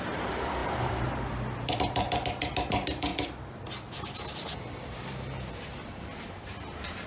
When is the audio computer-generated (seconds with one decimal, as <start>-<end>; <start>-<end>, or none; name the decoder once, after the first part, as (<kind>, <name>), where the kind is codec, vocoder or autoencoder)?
0.0-3.1 (vocoder, BigVGAN v2); 4.6-7.1